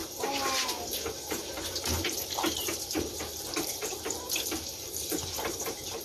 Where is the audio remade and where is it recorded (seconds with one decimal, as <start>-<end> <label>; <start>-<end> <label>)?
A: 0.0-1.1 recorded; 1.1-6.0 remade